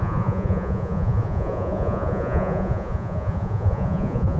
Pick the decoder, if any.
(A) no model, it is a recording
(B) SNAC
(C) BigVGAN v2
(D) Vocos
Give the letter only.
D